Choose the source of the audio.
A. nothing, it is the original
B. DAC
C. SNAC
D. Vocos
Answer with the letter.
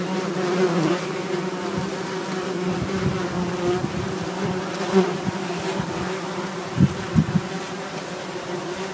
A